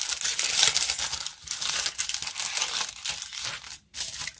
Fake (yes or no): no